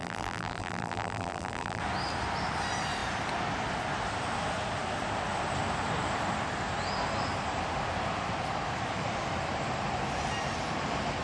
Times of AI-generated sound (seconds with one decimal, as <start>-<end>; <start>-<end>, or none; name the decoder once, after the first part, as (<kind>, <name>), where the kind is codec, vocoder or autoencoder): 0.0-1.8 (vocoder, BigVGAN v2)